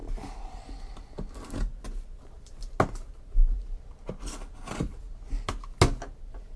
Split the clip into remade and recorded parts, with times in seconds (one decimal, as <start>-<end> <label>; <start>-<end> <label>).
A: 0.0-6.6 recorded